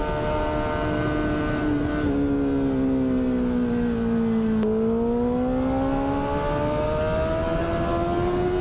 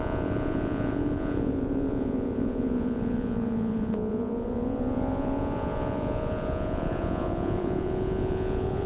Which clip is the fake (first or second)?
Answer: second